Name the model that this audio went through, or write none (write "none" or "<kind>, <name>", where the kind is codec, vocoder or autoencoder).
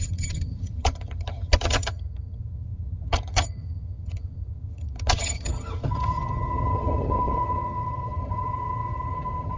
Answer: vocoder, HiFi-GAN